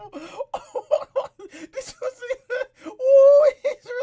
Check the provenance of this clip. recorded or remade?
recorded